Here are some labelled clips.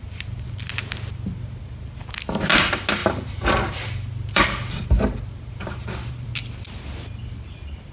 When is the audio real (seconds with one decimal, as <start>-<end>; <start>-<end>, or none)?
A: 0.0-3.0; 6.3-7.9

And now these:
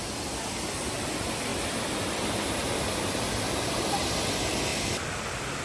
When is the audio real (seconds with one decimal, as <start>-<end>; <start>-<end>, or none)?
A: 0.0-1.5; 2.8-4.7

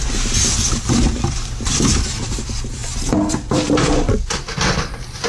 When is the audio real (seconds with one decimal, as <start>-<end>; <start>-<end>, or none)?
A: 0.0-1.3; 2.8-3.4

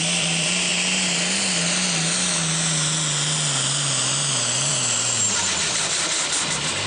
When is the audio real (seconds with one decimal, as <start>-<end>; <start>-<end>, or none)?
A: 0.7-4.7

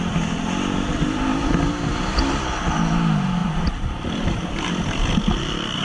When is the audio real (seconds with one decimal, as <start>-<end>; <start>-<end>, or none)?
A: 0.0-3.4; 4.7-5.8

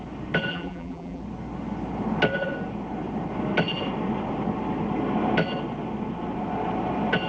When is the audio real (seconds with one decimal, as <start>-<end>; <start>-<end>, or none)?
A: 0.0-0.5; 1.2-7.3